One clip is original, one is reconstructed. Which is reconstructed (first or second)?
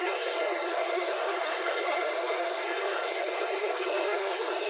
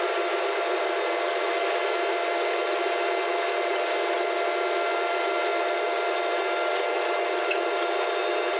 first